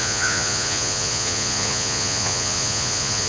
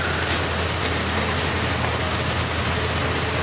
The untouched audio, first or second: second